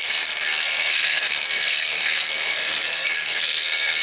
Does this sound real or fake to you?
fake